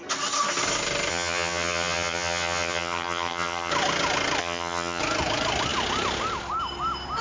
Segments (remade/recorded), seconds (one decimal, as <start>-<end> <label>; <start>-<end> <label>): 0.0-1.1 recorded; 1.1-3.7 remade; 3.7-4.4 recorded; 4.4-5.0 remade; 5.0-7.2 recorded